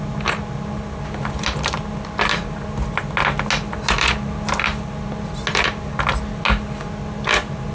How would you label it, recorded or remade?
recorded